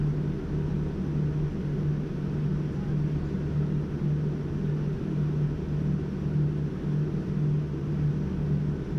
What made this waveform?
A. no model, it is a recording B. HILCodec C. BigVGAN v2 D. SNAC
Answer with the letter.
A